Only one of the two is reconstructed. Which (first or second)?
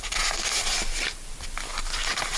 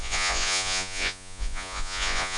second